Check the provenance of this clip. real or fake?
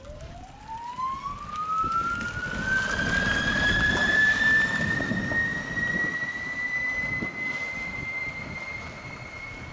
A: real